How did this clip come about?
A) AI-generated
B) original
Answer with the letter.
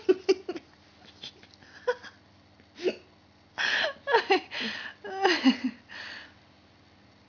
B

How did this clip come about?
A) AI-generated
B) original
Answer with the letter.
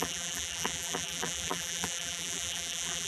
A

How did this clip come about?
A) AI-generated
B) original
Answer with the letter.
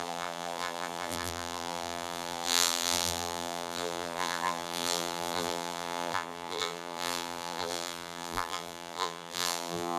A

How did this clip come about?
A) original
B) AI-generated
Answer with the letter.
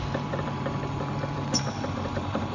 B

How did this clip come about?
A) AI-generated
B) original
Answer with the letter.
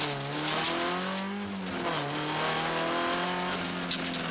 B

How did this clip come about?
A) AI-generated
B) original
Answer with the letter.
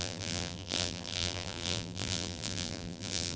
A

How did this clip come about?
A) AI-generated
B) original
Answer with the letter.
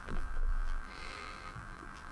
A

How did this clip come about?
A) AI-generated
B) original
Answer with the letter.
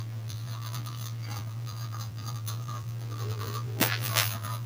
A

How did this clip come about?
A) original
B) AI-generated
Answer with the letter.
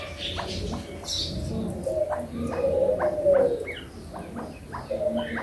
A